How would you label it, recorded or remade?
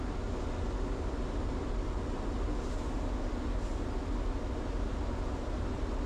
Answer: recorded